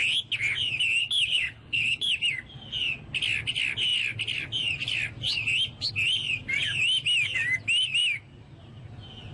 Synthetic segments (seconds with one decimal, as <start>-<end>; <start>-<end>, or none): 1.0-2.1